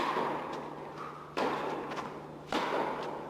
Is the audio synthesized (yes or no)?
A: no